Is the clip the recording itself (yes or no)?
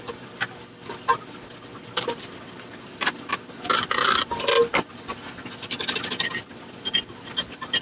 yes